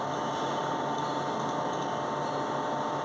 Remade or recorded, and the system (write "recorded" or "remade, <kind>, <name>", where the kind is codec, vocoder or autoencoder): recorded